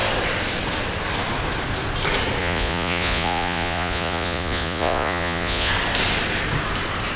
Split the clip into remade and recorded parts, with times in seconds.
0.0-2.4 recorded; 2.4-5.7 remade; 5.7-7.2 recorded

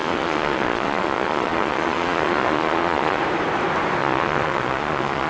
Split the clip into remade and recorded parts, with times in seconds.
0.0-3.2 remade; 3.2-4.0 recorded; 4.0-5.3 remade

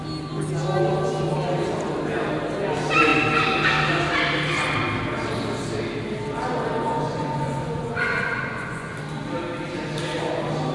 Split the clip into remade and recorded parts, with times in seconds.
0.0-6.8 recorded; 6.8-8.9 remade; 8.9-10.7 recorded

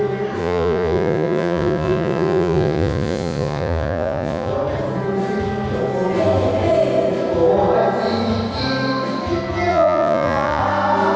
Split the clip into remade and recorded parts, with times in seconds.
0.0-0.4 recorded; 0.4-4.5 remade; 4.5-9.7 recorded; 9.7-10.6 remade; 10.6-11.2 recorded

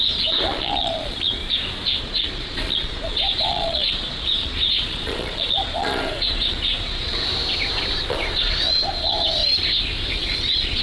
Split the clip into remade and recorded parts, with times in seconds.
0.0-1.4 remade; 1.4-2.0 recorded; 2.0-7.3 remade; 7.3-8.1 recorded; 8.1-9.4 remade; 9.4-10.1 recorded; 10.1-10.8 remade

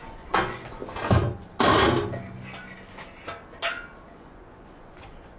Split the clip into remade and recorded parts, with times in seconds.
0.0-0.8 remade; 0.8-4.0 recorded; 4.0-5.4 remade